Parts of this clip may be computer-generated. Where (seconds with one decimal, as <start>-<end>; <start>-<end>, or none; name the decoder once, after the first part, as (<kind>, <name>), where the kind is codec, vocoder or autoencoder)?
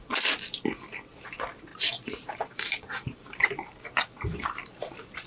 1.7-5.3 (vocoder, BigVGAN v2)